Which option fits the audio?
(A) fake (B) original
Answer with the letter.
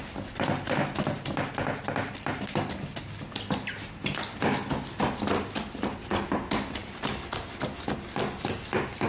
B